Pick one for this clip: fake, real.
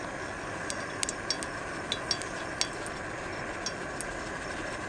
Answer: real